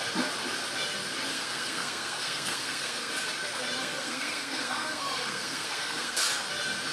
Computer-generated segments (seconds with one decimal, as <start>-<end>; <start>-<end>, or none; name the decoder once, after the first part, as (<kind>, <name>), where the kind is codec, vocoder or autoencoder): 1.3-3.1 (codec, SNAC); 3.8-6.2